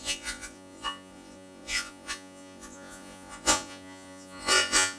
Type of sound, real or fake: fake